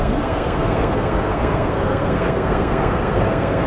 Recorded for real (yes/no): no